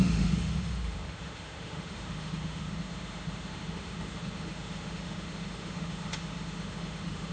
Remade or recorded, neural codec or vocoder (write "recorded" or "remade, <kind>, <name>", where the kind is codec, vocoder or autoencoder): remade, autoencoder, DAC-VAE